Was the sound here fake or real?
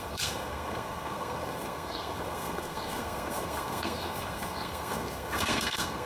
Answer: fake